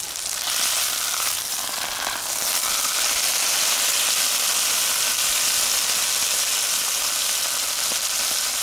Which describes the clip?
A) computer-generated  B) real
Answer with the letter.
B